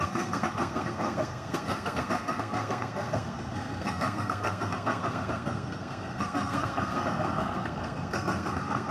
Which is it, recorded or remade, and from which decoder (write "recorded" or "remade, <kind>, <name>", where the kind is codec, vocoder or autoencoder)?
remade, codec, SNAC